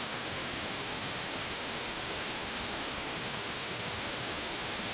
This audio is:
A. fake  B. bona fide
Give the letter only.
A